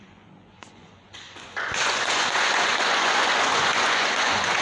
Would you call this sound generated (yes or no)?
yes